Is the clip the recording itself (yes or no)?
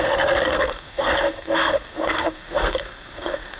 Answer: no